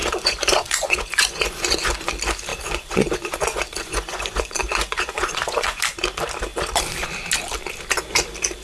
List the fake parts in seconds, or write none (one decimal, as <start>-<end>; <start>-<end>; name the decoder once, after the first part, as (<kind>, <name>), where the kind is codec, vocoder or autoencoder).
0.0-2.1 (vocoder, Vocos); 2.5-5.8